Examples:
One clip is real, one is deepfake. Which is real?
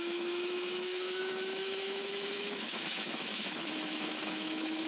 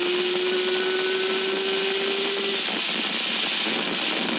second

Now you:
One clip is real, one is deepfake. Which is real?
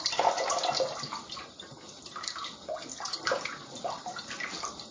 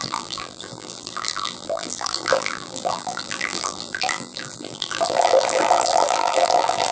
first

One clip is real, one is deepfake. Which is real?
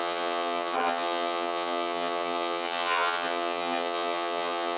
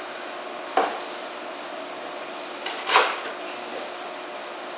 second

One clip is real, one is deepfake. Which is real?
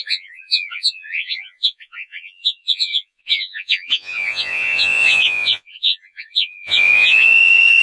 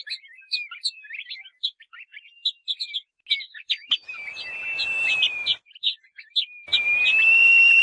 second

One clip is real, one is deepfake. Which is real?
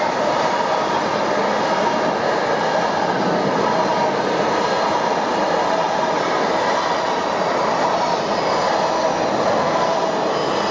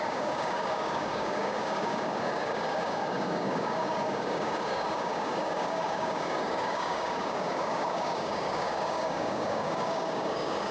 first